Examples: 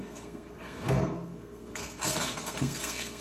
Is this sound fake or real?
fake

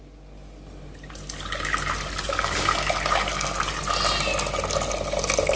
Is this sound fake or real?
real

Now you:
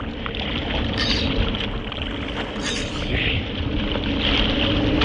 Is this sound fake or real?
real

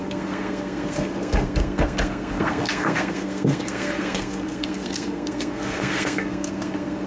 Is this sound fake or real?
fake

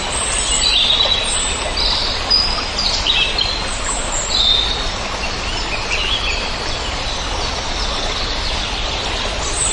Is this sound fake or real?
real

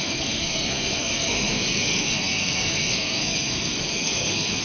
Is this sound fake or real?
fake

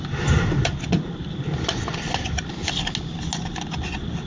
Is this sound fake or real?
real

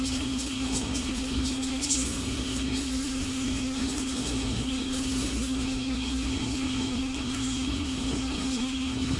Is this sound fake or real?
fake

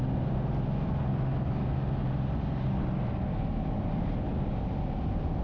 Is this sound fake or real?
real